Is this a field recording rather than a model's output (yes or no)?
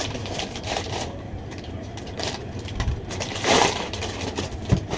no